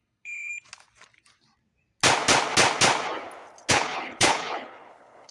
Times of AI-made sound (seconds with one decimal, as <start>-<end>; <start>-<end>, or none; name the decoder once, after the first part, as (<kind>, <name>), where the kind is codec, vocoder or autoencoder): 0.0-0.5 (codec, HILCodec); 3.7-5.3